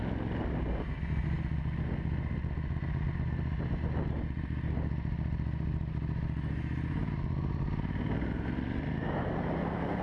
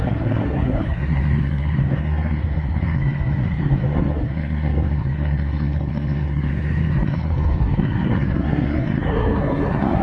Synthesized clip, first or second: second